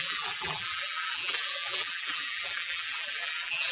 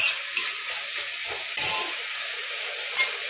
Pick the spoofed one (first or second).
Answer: first